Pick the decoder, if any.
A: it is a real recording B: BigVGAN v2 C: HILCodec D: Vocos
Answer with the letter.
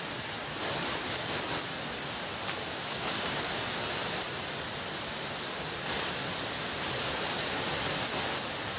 B